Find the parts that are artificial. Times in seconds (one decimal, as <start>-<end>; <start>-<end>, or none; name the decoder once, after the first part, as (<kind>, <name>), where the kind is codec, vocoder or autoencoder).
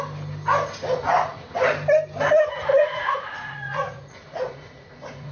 2.7-5.3 (vocoder, Vocos)